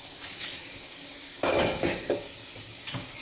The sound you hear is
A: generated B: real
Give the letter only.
A